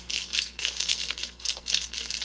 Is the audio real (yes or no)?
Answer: no